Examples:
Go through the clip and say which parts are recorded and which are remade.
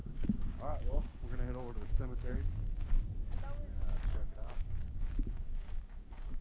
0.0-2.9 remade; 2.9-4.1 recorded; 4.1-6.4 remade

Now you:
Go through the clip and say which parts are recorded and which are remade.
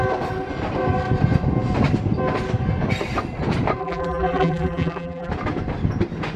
0.0-3.8 recorded; 3.8-5.3 remade; 5.3-6.4 recorded